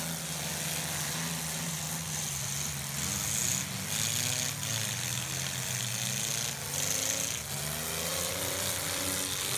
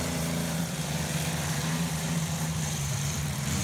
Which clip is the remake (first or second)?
second